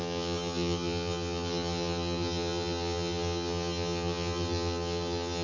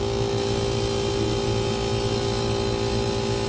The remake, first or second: first